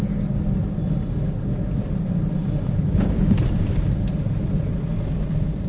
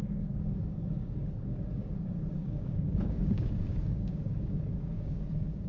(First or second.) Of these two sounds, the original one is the first